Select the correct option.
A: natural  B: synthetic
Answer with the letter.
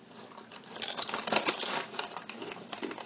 A